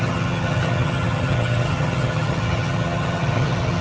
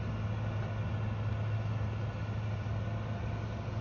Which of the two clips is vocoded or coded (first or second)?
first